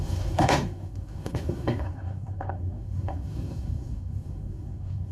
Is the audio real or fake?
fake